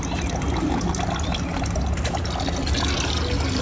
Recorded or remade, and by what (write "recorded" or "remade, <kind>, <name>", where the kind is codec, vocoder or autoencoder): recorded